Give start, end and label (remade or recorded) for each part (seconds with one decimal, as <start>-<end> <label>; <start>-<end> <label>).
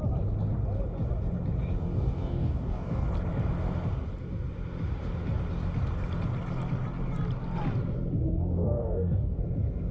0.0-1.8 recorded; 1.8-3.1 remade; 3.1-8.3 recorded; 8.3-9.4 remade; 9.4-9.9 recorded